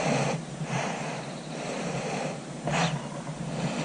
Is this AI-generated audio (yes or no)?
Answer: no